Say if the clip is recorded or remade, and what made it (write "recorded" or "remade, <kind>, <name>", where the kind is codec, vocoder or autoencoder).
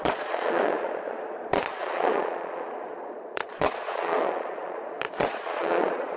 remade, vocoder, Vocos